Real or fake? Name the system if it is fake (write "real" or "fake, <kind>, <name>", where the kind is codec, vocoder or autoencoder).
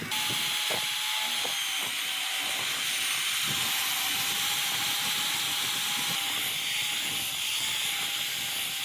real